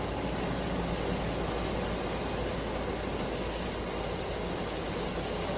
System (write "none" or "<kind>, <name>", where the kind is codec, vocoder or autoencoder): none